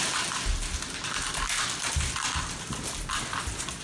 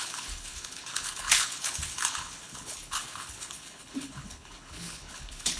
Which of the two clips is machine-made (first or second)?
second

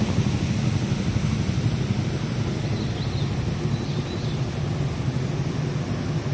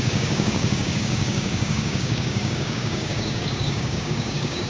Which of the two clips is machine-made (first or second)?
second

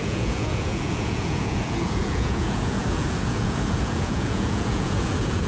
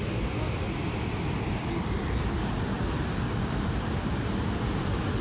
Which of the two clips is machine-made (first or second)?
first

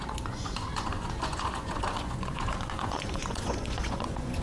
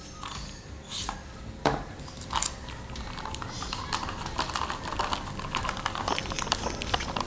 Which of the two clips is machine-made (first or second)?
first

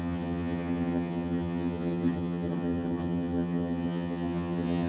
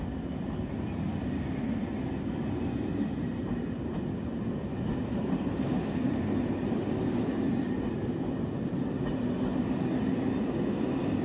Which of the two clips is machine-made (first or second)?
first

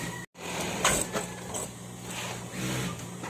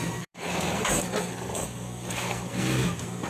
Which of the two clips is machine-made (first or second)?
second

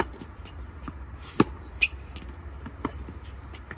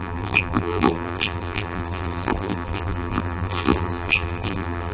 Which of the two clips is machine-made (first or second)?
second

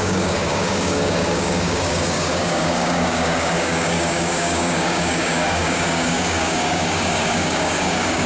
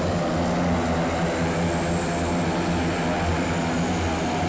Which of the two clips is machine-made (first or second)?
first